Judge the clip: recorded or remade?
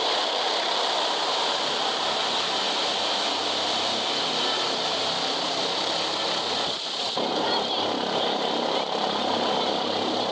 recorded